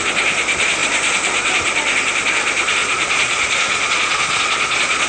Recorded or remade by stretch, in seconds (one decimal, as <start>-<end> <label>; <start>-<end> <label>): 0.0-2.8 recorded; 2.8-5.1 remade